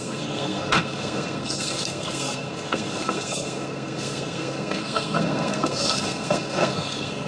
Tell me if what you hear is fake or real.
fake